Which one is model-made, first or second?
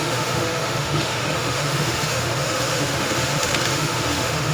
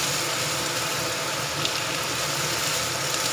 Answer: first